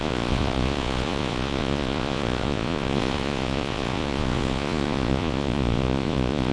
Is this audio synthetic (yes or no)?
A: yes